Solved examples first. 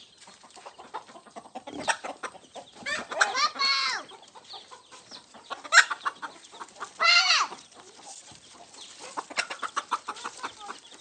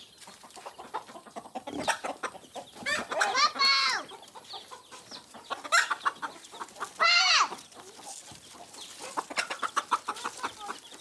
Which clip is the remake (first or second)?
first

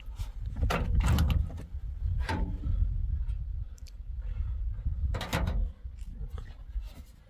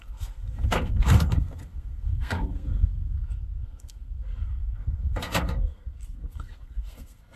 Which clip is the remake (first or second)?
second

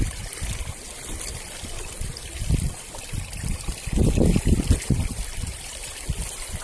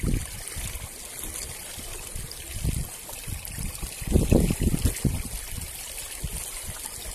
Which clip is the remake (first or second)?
first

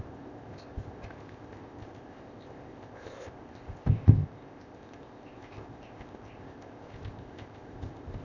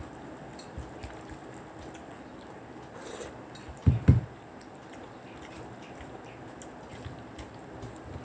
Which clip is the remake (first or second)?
first